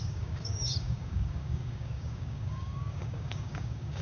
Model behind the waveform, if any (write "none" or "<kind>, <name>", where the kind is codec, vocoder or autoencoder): codec, DAC